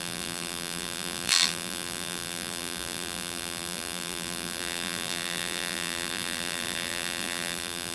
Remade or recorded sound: remade